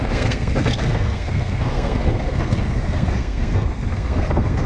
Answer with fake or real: fake